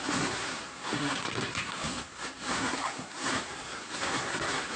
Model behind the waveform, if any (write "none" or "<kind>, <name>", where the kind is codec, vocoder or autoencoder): codec, SNAC